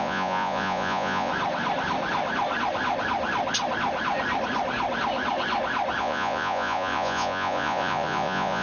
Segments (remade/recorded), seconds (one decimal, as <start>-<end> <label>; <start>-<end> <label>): 0.0-1.3 remade; 1.3-6.0 recorded; 6.0-8.6 remade